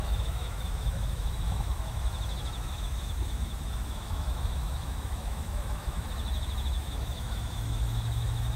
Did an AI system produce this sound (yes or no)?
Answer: yes